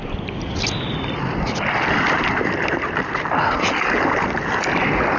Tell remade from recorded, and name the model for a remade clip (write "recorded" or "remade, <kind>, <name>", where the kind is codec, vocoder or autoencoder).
recorded